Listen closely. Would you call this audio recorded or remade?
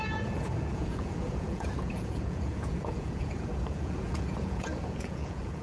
remade